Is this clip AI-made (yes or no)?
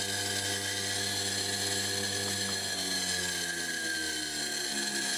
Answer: no